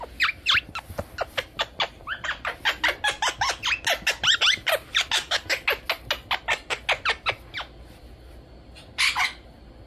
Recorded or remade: recorded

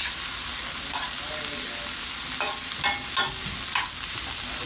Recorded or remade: recorded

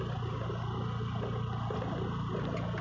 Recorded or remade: recorded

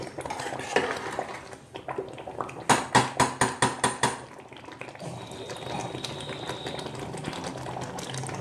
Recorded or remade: recorded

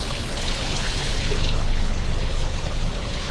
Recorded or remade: remade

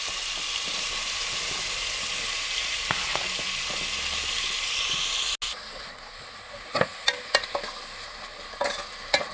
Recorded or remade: recorded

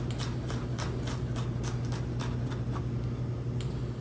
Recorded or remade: recorded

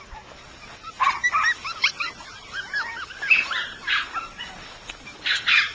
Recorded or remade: recorded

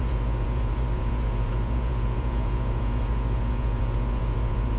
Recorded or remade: remade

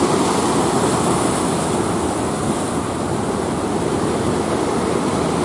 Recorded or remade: recorded